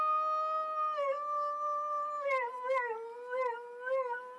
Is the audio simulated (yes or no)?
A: no